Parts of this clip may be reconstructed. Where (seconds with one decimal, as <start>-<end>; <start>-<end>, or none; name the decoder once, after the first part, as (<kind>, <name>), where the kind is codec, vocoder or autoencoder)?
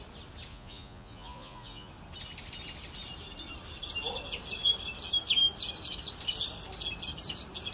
0.5-1.9 (vocoder, Vocos)